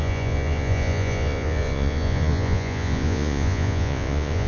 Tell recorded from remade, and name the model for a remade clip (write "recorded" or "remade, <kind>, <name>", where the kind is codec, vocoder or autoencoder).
remade, vocoder, Vocos